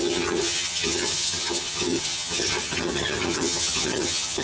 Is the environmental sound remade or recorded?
remade